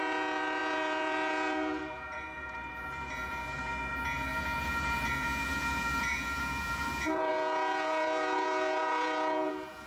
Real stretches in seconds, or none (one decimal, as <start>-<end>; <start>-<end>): none